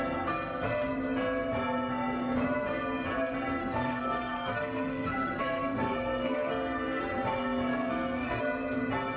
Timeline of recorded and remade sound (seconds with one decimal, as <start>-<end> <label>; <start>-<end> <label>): 0.0-3.6 recorded; 3.6-7.0 remade; 7.0-7.7 recorded; 7.7-8.4 remade; 8.4-9.2 recorded

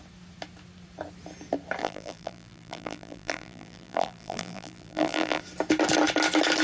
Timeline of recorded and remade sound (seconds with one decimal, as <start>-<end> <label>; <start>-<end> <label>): 0.0-1.8 recorded; 1.8-5.4 remade; 5.4-6.6 recorded

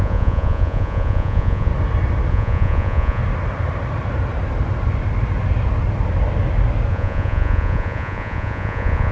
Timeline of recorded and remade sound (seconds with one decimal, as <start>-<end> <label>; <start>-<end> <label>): 0.0-1.7 remade; 1.7-2.3 recorded; 2.3-3.2 remade; 3.2-6.9 recorded; 6.9-9.1 remade

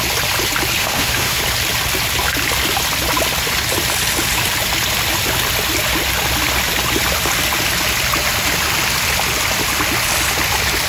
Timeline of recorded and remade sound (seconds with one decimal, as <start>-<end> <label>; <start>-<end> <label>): 0.0-0.8 recorded; 0.8-1.4 remade; 1.4-10.9 recorded

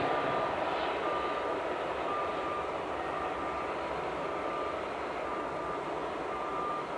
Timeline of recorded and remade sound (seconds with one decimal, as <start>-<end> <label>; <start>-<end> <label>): 0.0-7.0 recorded

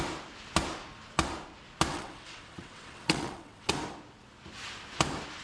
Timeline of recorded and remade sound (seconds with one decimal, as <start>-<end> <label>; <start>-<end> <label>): 0.0-1.9 recorded; 1.9-3.7 remade; 3.7-5.4 recorded

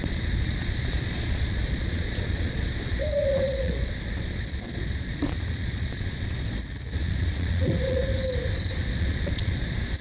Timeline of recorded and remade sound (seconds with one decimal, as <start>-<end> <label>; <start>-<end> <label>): 0.0-8.1 remade; 8.1-8.9 recorded; 8.9-10.0 remade